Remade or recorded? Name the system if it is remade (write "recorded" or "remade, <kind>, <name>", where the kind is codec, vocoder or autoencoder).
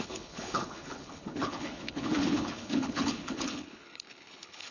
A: remade, codec, HILCodec